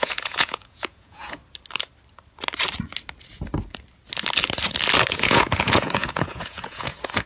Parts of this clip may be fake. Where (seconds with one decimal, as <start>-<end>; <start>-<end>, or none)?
0.0-1.4; 5.1-7.3